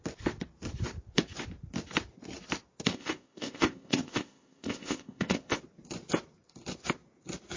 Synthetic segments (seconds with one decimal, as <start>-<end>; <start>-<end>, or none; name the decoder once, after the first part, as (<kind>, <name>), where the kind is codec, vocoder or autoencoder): 2.9-5.6 (codec, ZipCodec)